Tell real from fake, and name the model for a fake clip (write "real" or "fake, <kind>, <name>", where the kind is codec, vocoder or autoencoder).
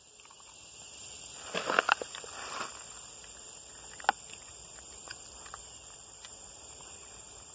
real